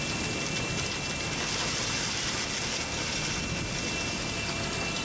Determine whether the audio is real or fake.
real